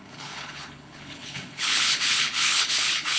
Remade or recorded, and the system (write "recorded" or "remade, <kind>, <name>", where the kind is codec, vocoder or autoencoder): remade, codec, HILCodec